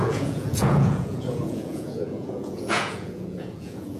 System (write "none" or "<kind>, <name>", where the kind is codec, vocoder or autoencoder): vocoder, Vocos